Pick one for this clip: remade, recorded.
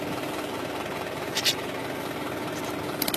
recorded